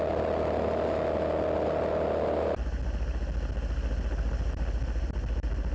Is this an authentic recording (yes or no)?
yes